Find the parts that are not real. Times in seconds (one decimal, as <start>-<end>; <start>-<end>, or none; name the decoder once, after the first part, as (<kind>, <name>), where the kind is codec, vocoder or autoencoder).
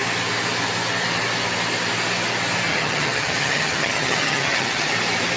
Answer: 2.7-4.9 (vocoder, HiFi-GAN)